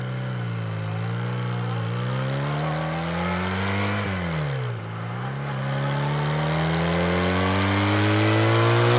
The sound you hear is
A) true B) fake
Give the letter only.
A